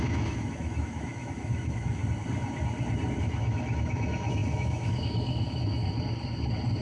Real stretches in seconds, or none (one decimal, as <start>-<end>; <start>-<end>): 2.0-3.2; 5.8-6.8

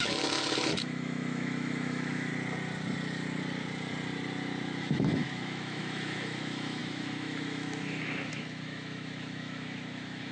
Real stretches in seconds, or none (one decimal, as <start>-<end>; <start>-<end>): 2.3-4.8

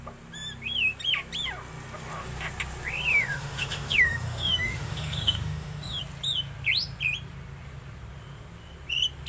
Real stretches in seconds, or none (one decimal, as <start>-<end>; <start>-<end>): 0.0-3.1; 6.0-9.3

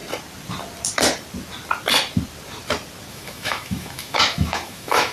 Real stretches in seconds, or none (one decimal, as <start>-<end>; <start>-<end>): 0.0-3.1

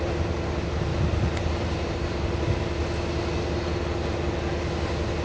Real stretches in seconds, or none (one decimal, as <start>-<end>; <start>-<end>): 0.0-5.2